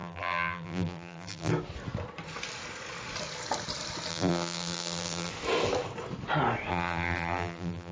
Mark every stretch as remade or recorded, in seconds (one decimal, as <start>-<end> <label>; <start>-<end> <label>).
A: 0.0-1.5 remade; 1.5-4.1 recorded; 4.1-5.3 remade; 5.3-6.7 recorded; 6.7-7.9 remade